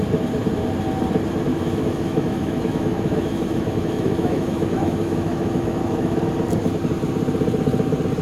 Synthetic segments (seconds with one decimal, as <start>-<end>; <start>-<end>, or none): 1.5-6.2